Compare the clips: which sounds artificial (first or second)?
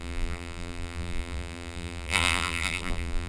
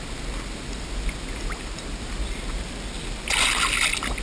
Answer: first